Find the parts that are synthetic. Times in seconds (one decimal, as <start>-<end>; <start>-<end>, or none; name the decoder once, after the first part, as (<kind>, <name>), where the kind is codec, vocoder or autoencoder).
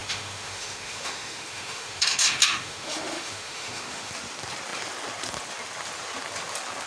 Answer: 0.0-4.1 (autoencoder, DAC-VAE)